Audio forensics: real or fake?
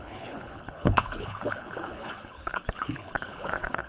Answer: fake